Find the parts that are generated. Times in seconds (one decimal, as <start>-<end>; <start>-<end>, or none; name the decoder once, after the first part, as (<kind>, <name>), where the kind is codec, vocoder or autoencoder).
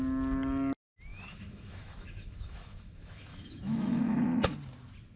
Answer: 1.1-4.2 (autoencoder, DAC-VAE)